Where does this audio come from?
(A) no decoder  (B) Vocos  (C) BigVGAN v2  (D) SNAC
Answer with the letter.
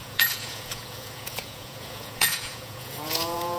B